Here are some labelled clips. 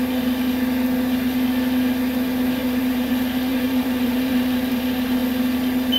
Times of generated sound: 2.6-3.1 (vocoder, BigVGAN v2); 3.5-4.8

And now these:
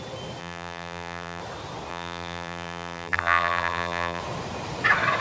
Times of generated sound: 0.4-1.4 (vocoder, BigVGAN v2); 1.9-4.2

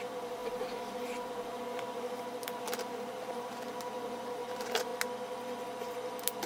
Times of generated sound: 0.0-4.9 (vocoder, BigVGAN v2)

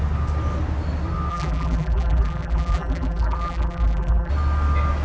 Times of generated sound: 1.3-4.3 (vocoder, BigVGAN v2)

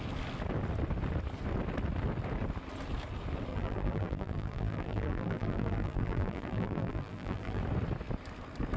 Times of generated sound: 3.5-7.6 (vocoder, BigVGAN v2)